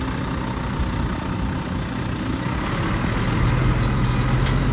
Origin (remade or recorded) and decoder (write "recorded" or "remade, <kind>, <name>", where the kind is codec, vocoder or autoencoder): recorded